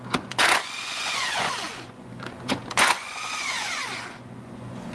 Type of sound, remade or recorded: remade